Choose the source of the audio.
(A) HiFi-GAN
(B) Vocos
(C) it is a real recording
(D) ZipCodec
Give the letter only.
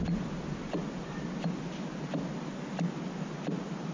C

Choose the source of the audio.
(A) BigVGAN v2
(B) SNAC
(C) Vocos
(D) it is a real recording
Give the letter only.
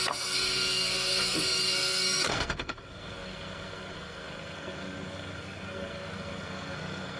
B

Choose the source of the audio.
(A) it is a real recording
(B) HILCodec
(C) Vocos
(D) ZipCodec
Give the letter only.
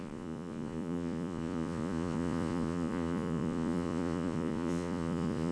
C